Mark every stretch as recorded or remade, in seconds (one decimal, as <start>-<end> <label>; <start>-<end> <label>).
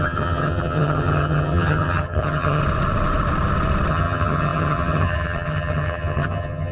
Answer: 0.0-2.6 remade; 2.6-3.9 recorded; 3.9-6.7 remade